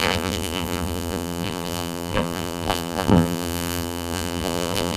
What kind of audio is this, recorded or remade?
remade